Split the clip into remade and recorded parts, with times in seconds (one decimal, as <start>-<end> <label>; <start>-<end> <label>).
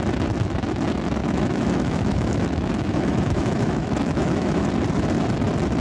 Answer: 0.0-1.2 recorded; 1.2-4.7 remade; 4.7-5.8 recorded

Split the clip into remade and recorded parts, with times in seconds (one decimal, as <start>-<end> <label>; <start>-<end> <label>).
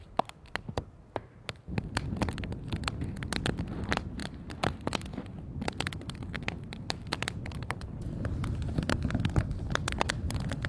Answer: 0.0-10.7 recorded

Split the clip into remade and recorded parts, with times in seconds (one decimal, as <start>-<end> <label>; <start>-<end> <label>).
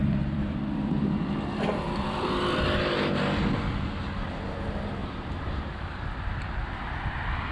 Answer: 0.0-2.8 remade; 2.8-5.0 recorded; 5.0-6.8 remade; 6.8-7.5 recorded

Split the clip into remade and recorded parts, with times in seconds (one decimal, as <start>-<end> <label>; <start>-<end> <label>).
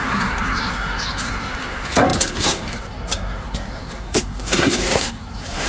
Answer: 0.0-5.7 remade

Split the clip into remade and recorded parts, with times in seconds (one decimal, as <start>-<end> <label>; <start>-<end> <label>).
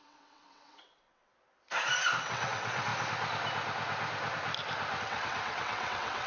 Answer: 0.0-1.3 remade; 1.3-2.2 recorded; 2.2-2.9 remade; 2.9-5.0 recorded; 5.0-6.3 remade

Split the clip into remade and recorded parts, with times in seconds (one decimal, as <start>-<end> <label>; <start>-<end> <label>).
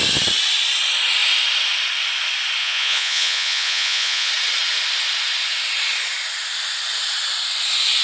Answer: 0.0-2.6 recorded; 2.6-4.3 remade; 4.3-8.0 recorded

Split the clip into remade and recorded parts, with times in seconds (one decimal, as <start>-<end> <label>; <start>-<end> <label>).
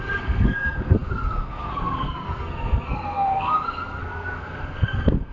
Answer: 0.0-5.3 remade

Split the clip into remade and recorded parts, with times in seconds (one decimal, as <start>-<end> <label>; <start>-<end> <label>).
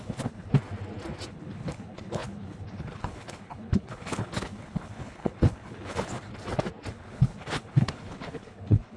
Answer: 0.0-0.5 remade; 0.5-1.3 recorded; 1.3-6.3 remade; 6.3-6.9 recorded; 6.9-9.0 remade